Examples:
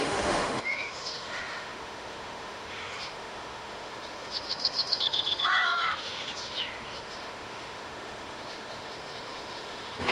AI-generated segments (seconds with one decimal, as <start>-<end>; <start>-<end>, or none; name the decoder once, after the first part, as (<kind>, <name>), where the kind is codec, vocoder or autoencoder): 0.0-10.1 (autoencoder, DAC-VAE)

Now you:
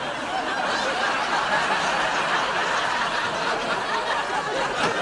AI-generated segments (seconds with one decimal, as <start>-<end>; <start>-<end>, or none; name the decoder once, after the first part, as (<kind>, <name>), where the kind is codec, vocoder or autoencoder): none

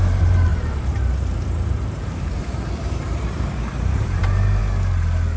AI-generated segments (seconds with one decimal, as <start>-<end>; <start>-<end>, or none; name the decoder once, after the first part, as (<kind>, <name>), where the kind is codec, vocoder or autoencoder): 0.0-4.6 (vocoder, BigVGAN v2)

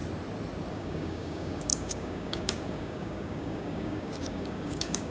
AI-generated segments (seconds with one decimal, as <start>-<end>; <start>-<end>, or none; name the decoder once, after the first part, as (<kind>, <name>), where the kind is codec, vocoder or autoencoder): 0.7-5.1 (codec, DAC)